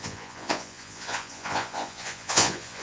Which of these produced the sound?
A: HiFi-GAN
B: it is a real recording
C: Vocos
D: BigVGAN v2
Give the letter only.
C